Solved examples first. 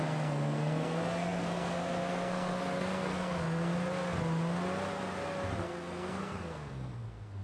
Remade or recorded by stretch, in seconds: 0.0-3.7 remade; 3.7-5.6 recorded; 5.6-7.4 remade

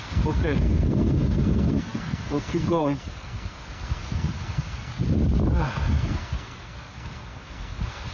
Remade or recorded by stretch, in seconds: 0.0-4.9 remade; 4.9-5.6 recorded; 5.6-8.1 remade

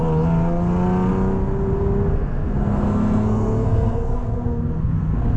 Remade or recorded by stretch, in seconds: 0.0-2.1 recorded; 2.1-5.4 remade

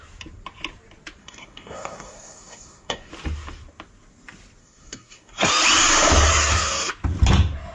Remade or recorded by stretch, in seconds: 0.0-1.2 recorded; 1.2-3.1 remade; 3.1-4.6 recorded; 4.6-5.5 remade; 5.5-6.3 recorded; 6.3-6.9 remade; 6.9-7.7 recorded

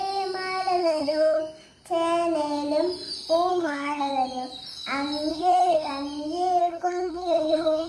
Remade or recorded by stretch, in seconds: 0.0-0.8 recorded; 0.8-1.4 remade; 1.4-3.5 recorded; 3.5-4.1 remade; 4.1-5.3 recorded; 5.3-5.9 remade; 5.9-6.6 recorded; 6.6-7.9 remade

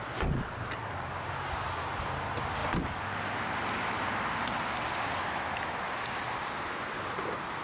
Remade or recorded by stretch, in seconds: 0.0-7.6 recorded

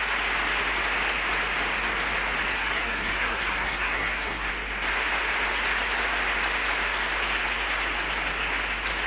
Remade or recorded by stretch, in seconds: 0.0-2.5 recorded; 2.5-4.5 remade; 4.5-9.1 recorded